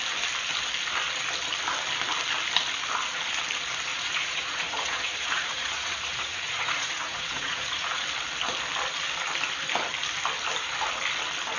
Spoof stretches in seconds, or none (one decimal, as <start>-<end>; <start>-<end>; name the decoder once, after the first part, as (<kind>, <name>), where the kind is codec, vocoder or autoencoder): 3.9-8.0 (vocoder, Vocos)